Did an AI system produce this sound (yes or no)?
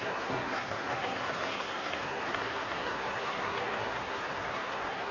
yes